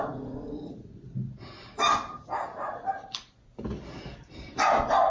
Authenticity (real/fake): real